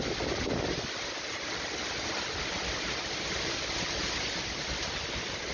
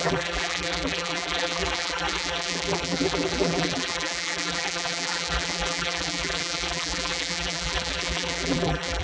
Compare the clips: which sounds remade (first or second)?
second